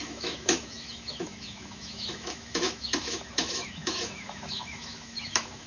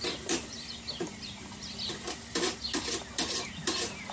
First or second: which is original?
second